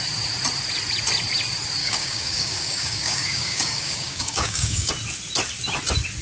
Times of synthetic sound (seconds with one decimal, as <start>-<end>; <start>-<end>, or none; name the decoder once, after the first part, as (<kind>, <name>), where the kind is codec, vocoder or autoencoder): 1.8-4.9 (codec, DAC)